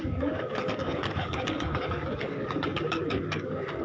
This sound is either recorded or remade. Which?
remade